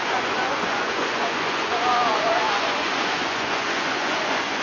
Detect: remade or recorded remade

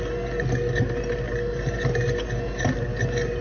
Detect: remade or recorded recorded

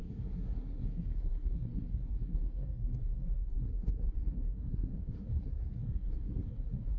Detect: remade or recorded remade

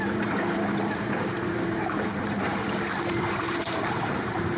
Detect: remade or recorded remade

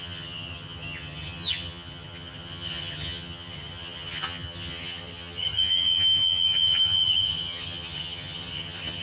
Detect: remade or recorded remade